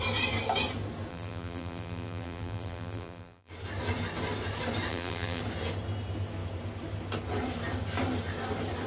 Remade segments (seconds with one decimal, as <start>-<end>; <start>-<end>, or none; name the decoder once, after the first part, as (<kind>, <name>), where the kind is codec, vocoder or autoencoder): 1.1-3.5 (vocoder, BigVGAN v2); 4.9-5.4